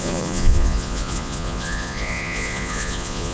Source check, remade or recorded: remade